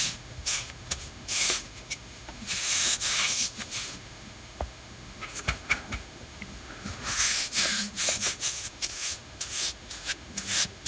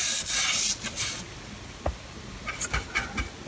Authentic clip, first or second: second